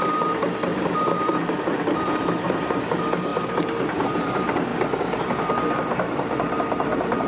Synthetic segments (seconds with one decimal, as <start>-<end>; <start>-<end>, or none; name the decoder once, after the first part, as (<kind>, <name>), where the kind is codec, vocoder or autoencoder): 0.0-7.3 (vocoder, BigVGAN v2)